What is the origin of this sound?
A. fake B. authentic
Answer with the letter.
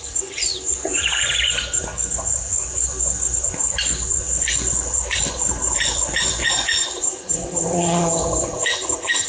A